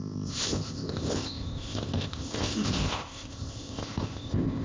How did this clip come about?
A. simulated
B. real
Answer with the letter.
A